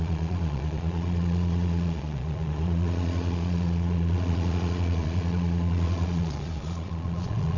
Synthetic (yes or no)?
yes